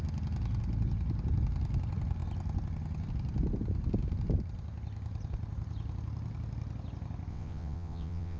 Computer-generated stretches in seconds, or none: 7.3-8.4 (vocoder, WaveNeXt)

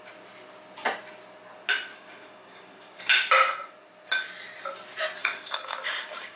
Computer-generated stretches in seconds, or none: 1.9-3.0 (codec, DAC); 5.2-6.4

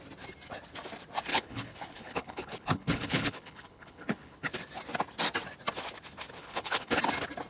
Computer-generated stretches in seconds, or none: 1.3-4.5 (codec, HILCodec); 6.4-7.0

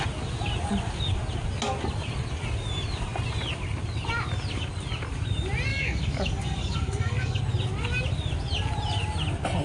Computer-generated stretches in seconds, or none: 5.7-7.4 (codec, DAC)

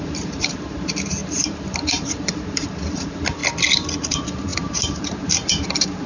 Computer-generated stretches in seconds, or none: 0.0-3.4 (vocoder, BigVGAN v2); 4.1-6.1

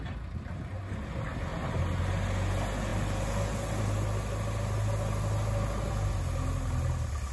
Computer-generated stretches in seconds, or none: none

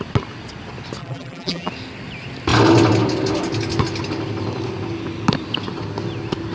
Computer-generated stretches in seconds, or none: 1.0-1.7 (vocoder, BigVGAN v2)